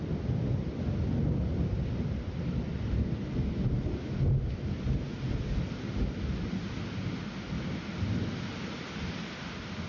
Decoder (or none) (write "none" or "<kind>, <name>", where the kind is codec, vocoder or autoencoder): none